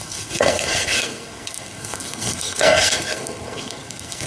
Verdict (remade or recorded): remade